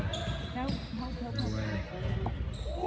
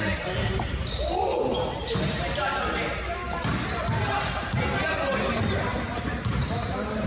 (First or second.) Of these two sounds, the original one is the first